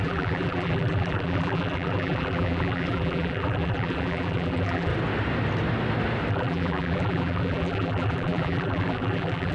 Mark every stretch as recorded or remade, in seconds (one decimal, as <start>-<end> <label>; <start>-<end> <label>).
0.0-4.9 remade; 4.9-6.3 recorded; 6.3-9.5 remade